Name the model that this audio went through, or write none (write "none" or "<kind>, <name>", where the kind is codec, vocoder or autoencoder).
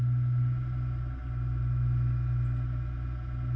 none